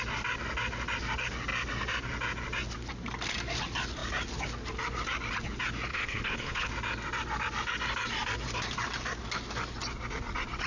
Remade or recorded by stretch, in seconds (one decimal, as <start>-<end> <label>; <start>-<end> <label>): 0.0-5.9 recorded; 5.9-6.7 remade; 6.7-10.7 recorded